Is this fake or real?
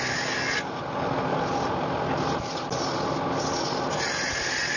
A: real